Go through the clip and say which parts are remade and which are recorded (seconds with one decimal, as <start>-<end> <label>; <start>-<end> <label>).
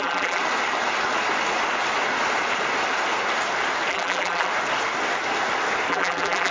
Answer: 0.0-0.4 remade; 0.4-3.9 recorded; 3.9-4.5 remade; 4.5-5.9 recorded; 5.9-6.5 remade